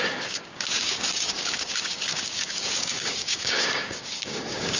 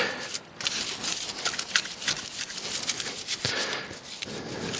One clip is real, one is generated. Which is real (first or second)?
second